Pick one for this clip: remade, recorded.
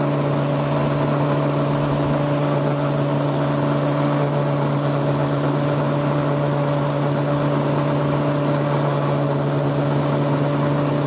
recorded